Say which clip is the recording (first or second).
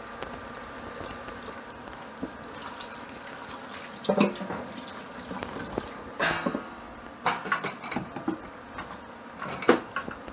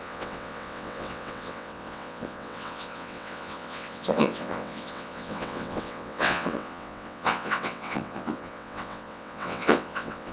first